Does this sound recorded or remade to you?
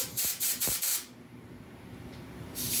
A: remade